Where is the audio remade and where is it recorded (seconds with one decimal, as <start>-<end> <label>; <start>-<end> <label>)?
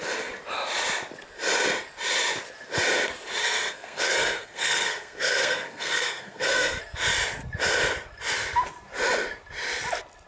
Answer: 0.0-3.4 recorded; 3.4-6.8 remade; 6.8-10.3 recorded